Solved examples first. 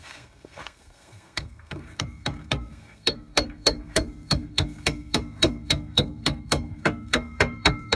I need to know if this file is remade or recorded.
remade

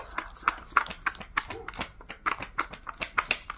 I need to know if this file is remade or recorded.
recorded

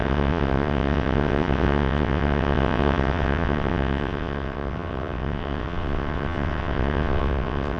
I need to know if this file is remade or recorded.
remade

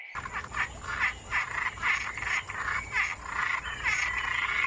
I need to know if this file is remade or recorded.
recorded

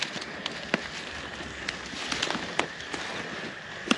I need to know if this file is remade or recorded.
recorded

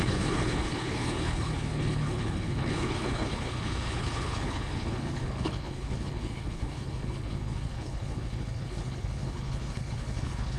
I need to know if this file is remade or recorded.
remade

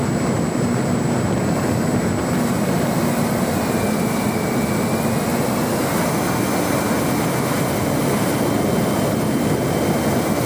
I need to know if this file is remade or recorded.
recorded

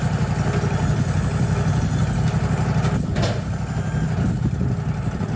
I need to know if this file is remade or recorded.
recorded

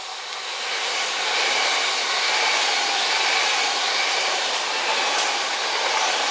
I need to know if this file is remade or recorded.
recorded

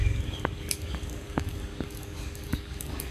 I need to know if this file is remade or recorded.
remade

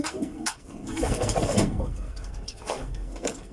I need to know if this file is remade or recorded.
remade